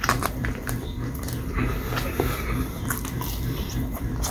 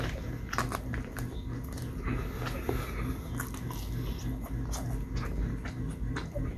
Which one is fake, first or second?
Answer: first